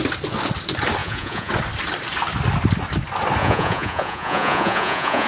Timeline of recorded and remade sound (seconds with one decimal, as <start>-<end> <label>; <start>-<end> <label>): 0.0-1.0 recorded; 1.0-1.5 remade; 1.5-3.4 recorded; 3.4-5.3 remade